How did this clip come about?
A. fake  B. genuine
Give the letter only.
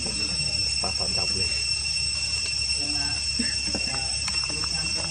A